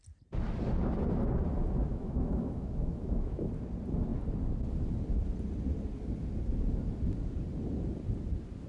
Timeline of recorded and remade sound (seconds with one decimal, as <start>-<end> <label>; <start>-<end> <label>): 0.0-1.9 recorded; 1.9-3.5 remade; 3.5-8.7 recorded